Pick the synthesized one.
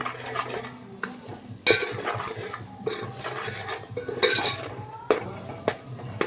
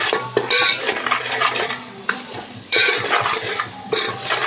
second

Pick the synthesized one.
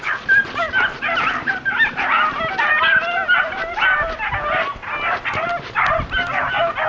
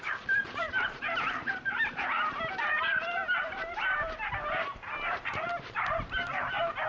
second